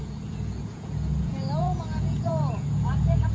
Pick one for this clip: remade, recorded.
remade